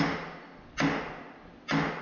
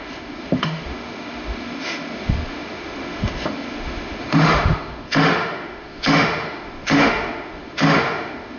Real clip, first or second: first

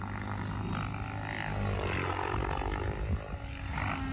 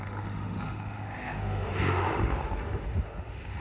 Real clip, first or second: first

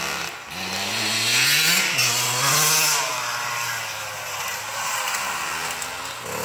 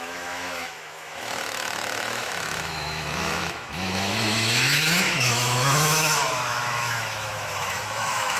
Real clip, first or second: first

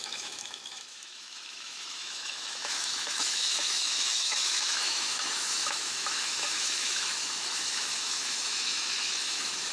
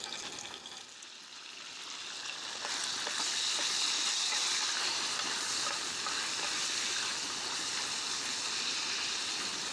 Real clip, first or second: second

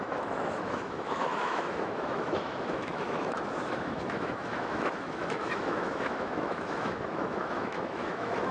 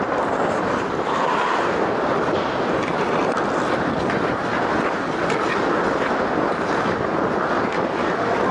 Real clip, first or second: second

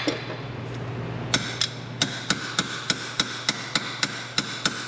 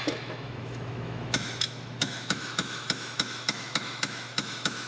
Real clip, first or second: first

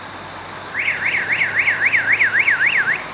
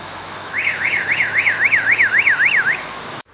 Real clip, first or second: first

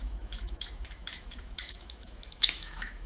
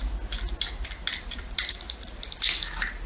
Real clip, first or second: second